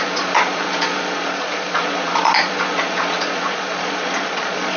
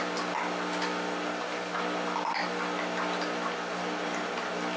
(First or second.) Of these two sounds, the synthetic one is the first